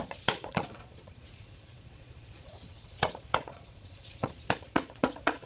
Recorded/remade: remade